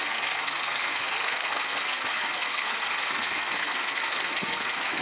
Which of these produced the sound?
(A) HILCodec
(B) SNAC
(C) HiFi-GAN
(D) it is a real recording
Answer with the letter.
B